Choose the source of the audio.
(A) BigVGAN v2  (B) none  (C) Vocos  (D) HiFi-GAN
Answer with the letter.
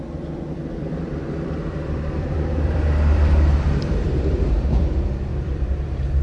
A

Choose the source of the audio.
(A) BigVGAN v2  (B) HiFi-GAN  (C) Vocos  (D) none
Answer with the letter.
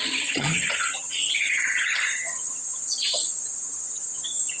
B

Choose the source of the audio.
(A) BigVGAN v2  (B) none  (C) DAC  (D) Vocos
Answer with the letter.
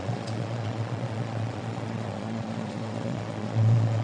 D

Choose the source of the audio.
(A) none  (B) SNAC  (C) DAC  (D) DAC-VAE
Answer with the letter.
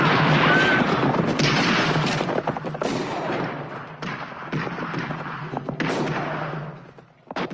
A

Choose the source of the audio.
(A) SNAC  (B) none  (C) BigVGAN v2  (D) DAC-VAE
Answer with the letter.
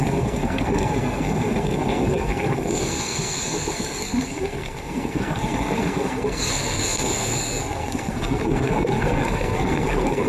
A